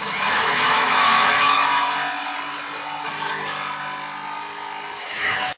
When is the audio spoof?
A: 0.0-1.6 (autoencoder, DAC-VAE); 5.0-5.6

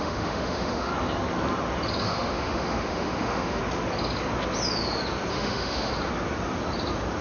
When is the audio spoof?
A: 0.0-0.9 (autoencoder, DAC-VAE); 2.0-3.6; 5.3-5.9

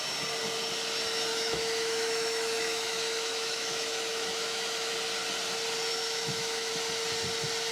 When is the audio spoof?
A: 1.3-4.9 (autoencoder, DAC-VAE); 5.9-6.7